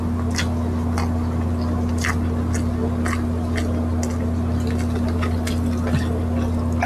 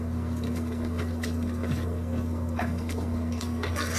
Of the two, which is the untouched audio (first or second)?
first